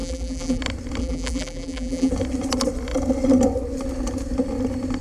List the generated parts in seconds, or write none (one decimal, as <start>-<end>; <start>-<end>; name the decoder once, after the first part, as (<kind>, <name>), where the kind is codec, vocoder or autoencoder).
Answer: 0.0-0.6 (vocoder, BigVGAN v2); 1.0-2.1